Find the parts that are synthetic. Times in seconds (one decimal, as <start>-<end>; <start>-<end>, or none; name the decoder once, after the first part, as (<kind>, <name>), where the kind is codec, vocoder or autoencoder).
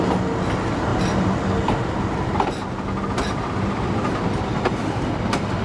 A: none